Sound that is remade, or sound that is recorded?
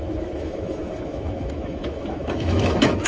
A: remade